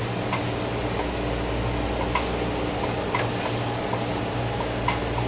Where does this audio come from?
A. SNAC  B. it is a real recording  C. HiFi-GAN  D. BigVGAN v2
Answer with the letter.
B